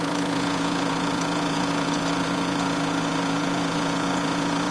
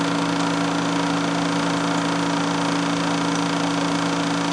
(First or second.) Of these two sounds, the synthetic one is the first